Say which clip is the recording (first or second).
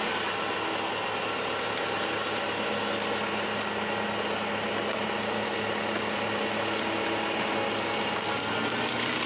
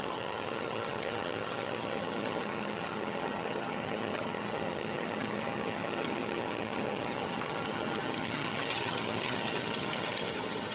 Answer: first